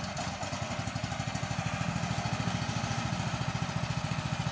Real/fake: fake